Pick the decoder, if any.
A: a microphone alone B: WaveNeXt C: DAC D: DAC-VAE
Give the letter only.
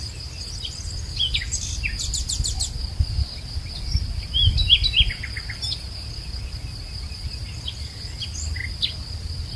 A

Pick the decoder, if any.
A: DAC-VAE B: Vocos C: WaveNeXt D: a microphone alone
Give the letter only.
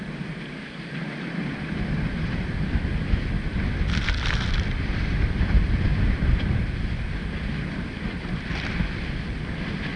D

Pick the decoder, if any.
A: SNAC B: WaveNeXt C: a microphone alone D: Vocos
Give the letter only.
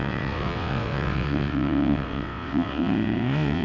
B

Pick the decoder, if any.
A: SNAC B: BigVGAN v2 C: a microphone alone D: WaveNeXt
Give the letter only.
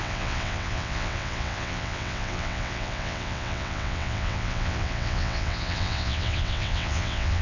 D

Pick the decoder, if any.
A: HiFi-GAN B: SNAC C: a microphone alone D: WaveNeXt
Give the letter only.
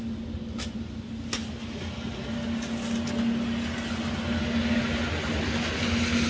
C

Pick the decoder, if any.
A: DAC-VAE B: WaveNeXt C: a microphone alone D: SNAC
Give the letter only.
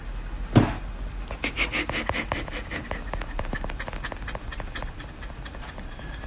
C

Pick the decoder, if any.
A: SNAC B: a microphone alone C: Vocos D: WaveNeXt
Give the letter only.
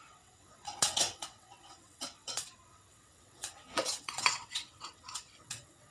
D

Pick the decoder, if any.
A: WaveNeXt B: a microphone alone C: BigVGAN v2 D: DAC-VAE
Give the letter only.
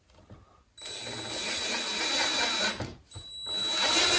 B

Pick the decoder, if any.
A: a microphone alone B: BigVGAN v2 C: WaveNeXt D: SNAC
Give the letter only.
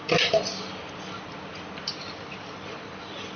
A